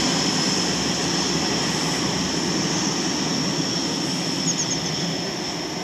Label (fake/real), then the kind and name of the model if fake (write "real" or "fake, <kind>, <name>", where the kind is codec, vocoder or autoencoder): real